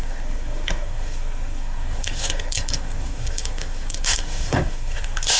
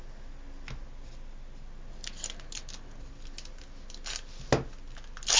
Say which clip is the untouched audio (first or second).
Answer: second